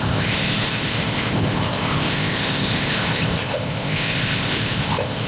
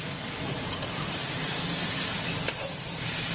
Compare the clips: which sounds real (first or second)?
second